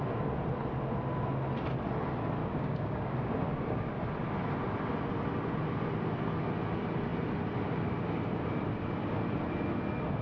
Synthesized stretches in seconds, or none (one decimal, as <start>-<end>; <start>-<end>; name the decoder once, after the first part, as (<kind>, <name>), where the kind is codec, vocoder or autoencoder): 2.4-3.3 (codec, DAC)